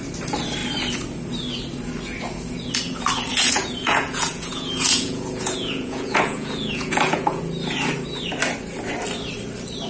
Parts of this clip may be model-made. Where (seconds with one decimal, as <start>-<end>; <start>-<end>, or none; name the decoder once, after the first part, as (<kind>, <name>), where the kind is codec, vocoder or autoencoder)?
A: 3.3-7.4 (vocoder, Vocos)